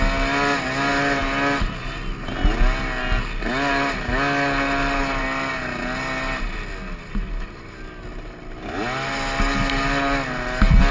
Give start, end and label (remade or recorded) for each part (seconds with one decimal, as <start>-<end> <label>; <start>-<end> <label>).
0.0-10.9 recorded